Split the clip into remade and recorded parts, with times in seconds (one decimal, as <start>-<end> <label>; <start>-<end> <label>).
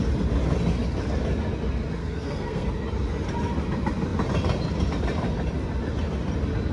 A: 0.0-2.0 recorded; 2.0-2.7 remade; 2.7-6.7 recorded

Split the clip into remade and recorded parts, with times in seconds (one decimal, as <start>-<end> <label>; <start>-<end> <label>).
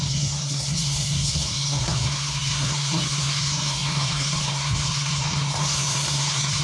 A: 0.0-6.6 remade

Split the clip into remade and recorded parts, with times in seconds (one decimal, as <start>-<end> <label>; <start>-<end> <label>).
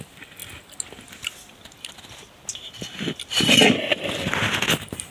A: 0.0-5.1 recorded